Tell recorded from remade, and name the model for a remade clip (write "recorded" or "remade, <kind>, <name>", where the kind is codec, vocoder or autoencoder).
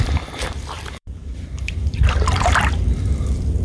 remade, vocoder, BigVGAN v2